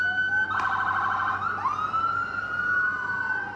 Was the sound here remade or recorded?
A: recorded